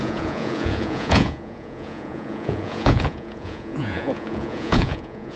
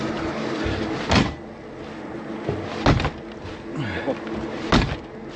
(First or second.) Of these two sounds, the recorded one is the second